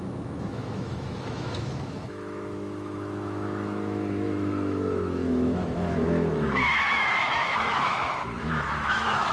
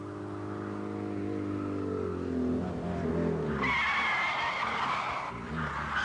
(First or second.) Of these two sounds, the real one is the second